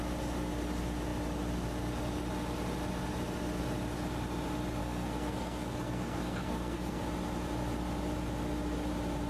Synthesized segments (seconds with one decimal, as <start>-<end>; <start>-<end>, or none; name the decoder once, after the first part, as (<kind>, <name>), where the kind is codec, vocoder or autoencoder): 4.8-7.0 (codec, SNAC)